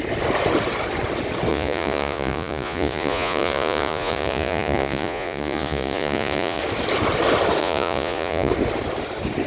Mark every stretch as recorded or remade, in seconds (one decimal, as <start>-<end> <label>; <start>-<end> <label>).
0.0-1.5 recorded; 1.5-6.6 remade; 6.6-7.6 recorded; 7.6-8.5 remade; 8.5-9.5 recorded